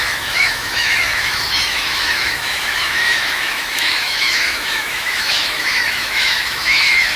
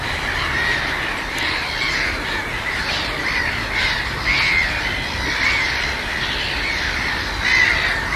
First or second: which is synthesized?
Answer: first